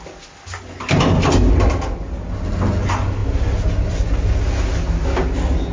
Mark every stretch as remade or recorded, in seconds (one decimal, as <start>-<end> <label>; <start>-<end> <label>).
0.0-5.7 recorded